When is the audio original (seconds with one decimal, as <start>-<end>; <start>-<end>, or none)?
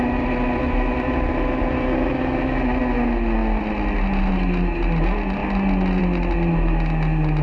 0.0-7.4